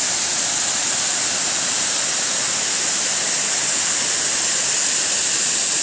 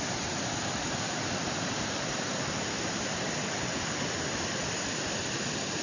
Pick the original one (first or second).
first